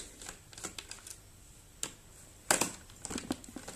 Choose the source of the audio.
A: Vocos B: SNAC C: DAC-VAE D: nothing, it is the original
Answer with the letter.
D